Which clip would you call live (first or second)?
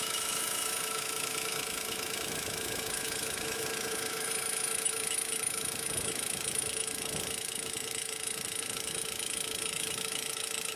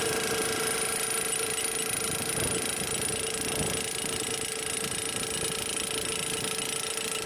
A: second